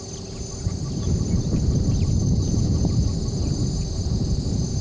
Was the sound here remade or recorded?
remade